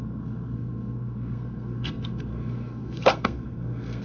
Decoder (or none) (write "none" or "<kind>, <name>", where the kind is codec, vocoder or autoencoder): codec, SNAC